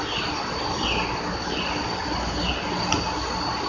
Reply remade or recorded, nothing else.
recorded